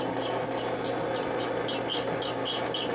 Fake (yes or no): no